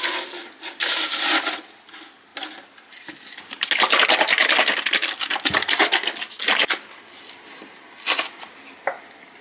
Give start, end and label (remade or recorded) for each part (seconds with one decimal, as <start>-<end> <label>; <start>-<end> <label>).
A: 0.0-9.4 recorded